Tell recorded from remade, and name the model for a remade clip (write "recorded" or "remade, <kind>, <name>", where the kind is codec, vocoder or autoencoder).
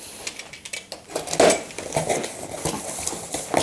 recorded